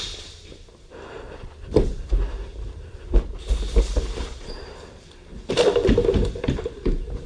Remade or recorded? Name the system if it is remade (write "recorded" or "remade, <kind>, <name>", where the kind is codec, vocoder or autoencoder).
remade, vocoder, BigVGAN v2